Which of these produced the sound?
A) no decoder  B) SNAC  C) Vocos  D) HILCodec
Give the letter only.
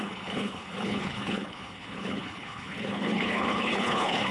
D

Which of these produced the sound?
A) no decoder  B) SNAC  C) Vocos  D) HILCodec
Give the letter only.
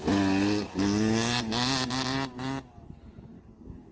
A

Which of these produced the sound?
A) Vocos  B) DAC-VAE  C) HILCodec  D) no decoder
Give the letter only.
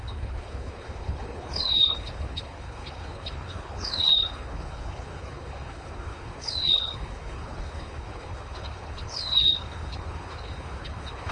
C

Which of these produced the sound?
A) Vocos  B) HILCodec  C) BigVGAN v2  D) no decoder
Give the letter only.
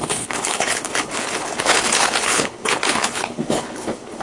B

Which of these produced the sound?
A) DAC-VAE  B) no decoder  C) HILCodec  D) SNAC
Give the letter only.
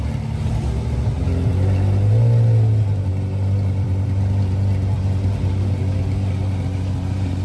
B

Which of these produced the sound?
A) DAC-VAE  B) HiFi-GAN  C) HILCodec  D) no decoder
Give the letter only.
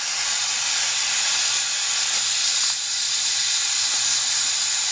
D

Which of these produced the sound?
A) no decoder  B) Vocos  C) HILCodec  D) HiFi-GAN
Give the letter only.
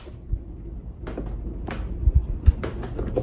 A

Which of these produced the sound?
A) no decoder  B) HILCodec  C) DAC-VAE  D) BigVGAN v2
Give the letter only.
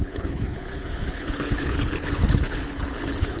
B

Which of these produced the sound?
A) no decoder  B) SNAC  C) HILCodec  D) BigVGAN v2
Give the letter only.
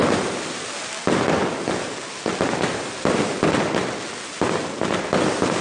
A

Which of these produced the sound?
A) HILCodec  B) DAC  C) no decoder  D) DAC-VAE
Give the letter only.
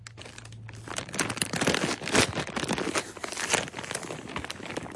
C